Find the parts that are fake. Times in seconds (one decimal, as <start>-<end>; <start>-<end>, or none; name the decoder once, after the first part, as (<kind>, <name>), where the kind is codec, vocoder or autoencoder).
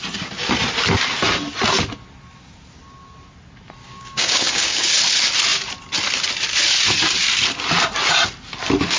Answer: 3.8-4.9 (codec, DAC)